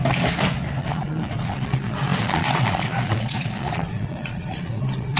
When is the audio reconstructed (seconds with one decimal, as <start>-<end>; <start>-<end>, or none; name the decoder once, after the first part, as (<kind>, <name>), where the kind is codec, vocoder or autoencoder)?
0.8-5.2 (vocoder, Vocos)